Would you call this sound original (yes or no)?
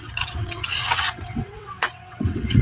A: no